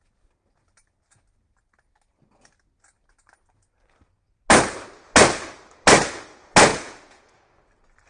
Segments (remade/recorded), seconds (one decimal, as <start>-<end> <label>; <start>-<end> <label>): 0.0-6.7 recorded; 6.7-7.5 remade; 7.5-8.1 recorded